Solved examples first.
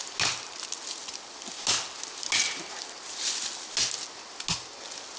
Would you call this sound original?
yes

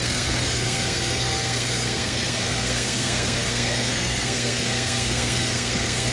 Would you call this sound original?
no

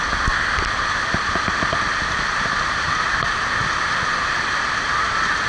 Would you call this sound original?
yes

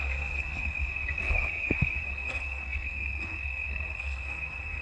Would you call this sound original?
no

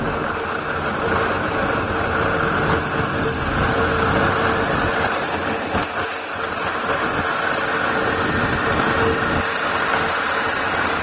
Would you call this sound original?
yes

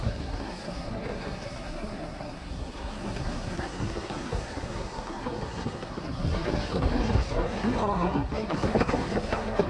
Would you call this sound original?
no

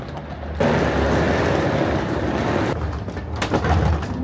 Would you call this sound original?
yes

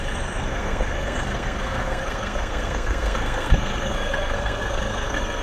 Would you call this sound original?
no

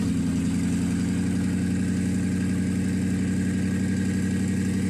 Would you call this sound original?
yes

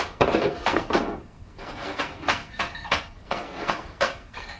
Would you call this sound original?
no